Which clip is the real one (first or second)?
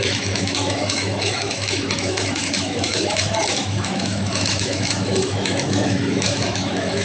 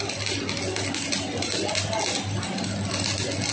second